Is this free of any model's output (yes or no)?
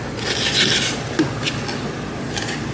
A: yes